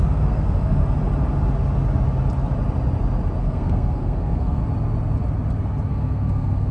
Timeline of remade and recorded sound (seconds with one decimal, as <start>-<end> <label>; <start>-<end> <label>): 0.0-0.8 remade; 0.8-3.4 recorded; 3.4-4.6 remade; 4.6-5.9 recorded; 5.9-6.7 remade